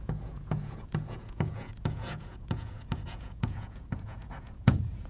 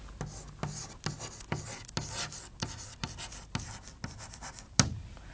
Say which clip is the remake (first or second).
first